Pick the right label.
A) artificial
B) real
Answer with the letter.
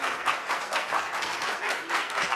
A